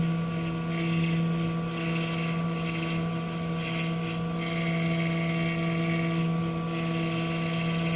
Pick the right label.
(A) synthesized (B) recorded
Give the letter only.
B